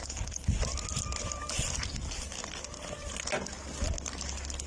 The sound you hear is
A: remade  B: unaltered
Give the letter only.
B